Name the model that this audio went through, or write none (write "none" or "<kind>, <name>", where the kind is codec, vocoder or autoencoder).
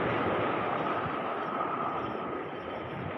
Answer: none